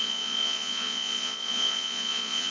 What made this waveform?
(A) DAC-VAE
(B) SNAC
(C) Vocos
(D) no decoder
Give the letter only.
C